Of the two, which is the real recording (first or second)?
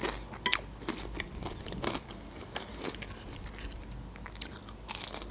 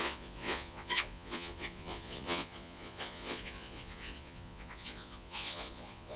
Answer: first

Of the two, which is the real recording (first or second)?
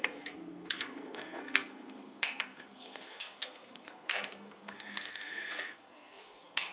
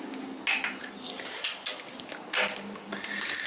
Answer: second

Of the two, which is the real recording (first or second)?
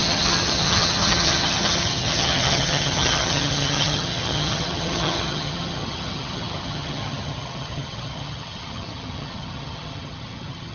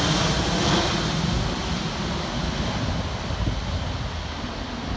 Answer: second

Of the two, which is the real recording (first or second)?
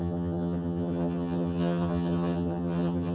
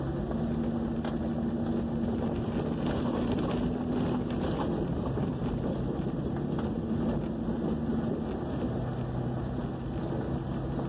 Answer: second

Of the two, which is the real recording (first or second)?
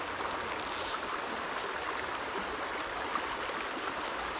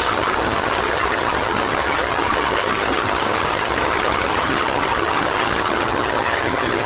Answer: first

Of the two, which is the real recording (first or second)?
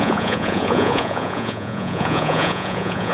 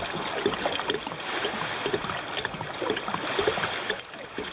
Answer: second